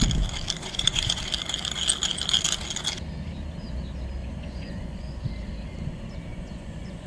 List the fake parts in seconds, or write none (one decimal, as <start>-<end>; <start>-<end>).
0.6-1.2; 4.2-5.2; 6.3-7.1